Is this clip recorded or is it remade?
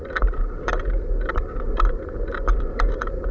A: remade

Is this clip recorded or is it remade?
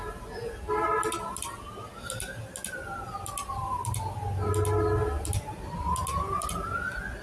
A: recorded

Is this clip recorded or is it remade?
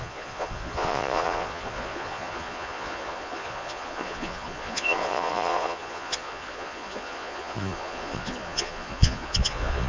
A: remade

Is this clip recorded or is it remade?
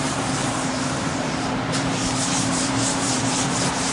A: remade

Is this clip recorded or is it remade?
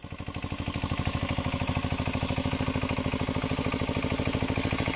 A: recorded